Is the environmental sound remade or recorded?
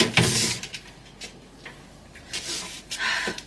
recorded